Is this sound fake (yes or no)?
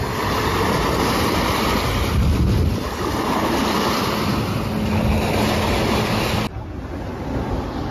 no